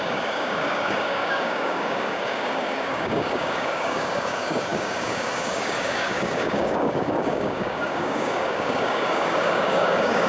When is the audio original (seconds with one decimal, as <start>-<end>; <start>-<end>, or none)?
none